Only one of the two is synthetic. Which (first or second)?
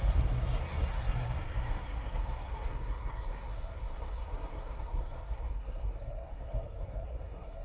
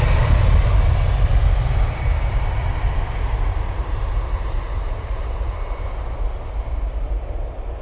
first